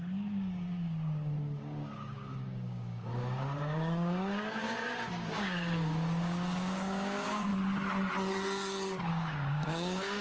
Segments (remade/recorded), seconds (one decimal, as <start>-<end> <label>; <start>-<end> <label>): 0.0-7.5 remade; 7.5-9.1 recorded; 9.1-10.2 remade